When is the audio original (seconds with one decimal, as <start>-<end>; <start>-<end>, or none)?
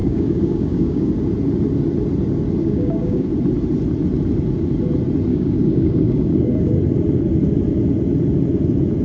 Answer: 1.1-2.6; 3.3-5.3; 6.7-9.0